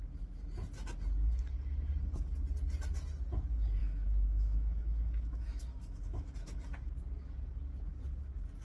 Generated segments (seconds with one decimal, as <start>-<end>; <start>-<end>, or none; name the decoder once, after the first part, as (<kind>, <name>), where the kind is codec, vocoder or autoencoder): 3.8-6.3 (autoencoder, DAC-VAE)